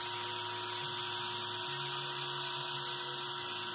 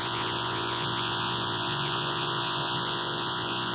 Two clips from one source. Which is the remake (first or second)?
second